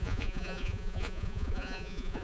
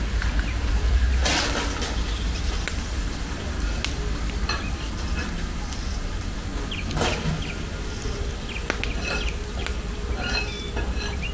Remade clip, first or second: first